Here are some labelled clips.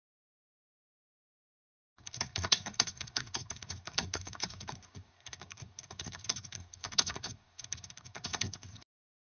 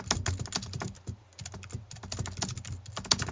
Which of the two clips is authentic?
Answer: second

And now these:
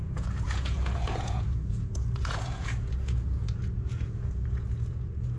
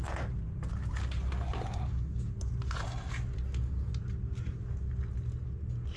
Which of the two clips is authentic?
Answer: second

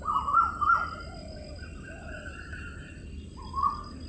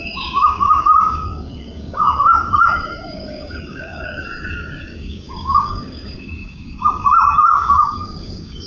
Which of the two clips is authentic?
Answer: first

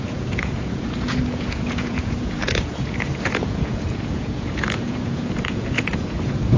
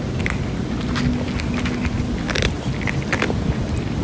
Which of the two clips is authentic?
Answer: second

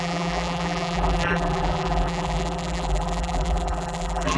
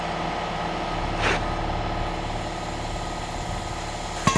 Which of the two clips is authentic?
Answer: second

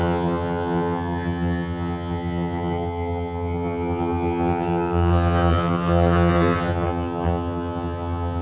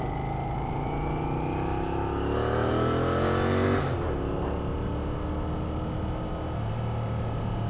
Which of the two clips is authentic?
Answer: second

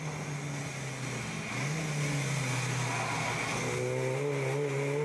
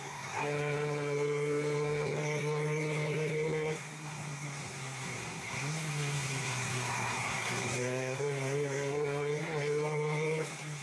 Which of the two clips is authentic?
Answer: first